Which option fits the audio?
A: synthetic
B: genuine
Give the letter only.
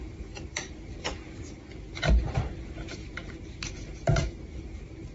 A